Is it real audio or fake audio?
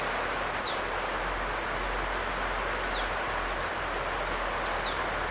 real